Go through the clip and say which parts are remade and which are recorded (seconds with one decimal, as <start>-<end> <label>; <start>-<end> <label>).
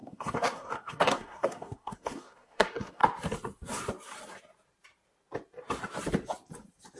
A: 0.0-3.0 remade; 3.0-7.0 recorded